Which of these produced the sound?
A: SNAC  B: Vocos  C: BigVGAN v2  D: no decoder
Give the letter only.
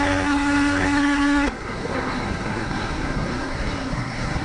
A